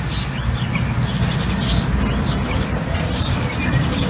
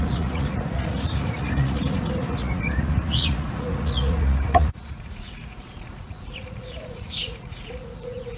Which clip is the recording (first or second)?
first